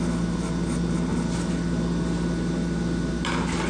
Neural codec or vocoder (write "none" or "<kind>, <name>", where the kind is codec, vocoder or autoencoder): none